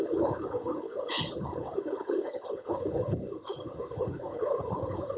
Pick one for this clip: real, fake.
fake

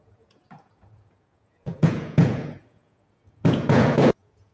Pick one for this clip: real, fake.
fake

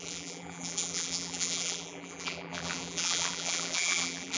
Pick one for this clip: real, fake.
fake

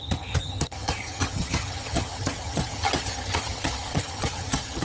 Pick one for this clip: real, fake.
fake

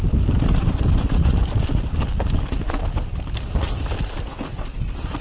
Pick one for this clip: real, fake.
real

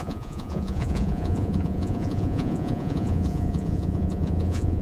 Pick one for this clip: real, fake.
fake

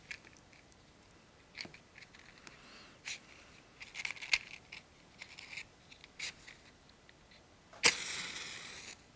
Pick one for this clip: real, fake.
real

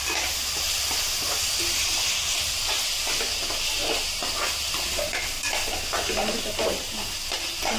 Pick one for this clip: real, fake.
real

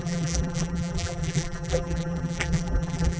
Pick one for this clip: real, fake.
fake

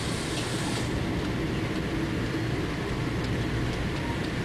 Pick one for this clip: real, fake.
real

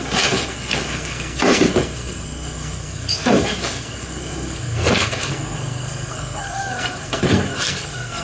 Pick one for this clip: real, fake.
fake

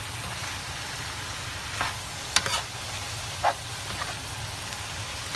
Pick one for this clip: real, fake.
real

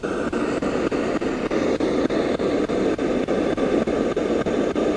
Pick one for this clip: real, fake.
real